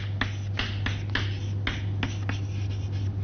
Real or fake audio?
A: real